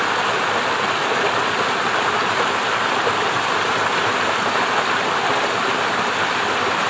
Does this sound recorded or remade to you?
recorded